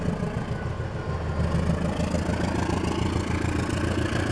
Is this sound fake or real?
real